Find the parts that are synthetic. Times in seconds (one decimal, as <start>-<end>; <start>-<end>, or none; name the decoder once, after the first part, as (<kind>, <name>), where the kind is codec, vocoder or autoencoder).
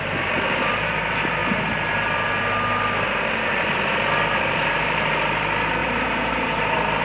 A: 5.8-7.0 (vocoder, BigVGAN v2)